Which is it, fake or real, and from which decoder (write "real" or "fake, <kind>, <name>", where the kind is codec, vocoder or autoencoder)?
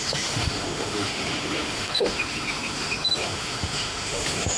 fake, autoencoder, DAC-VAE